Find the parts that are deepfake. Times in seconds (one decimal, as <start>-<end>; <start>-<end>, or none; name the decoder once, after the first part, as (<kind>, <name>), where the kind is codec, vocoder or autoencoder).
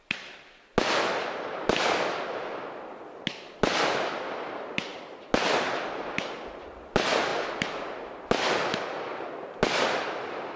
none